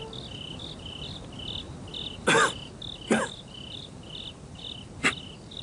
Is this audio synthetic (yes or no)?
no